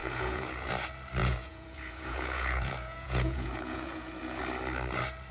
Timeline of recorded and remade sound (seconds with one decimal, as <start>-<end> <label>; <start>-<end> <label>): 0.0-0.7 remade; 0.7-1.2 recorded; 1.2-4.4 remade; 4.4-5.3 recorded